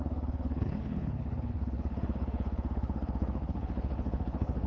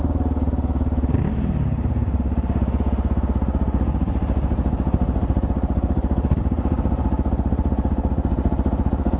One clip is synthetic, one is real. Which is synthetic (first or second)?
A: first